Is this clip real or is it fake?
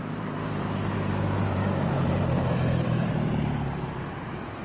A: fake